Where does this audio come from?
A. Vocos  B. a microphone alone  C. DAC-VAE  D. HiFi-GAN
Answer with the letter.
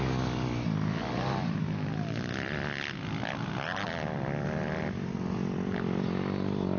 B